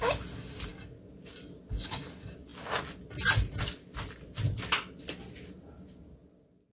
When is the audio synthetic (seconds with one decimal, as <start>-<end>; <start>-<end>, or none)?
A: none